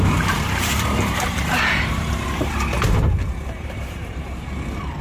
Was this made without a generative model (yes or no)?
no